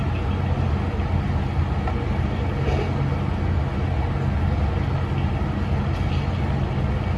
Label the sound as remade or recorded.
recorded